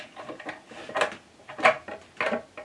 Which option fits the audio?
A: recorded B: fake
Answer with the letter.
A